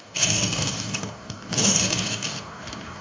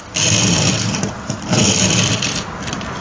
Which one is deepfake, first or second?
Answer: first